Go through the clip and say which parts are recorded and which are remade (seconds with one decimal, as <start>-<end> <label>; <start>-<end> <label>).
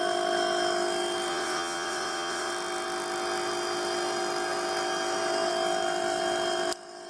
0.0-1.3 recorded; 1.3-2.5 remade; 2.5-7.1 recorded